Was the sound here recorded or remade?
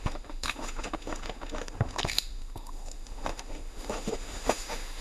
remade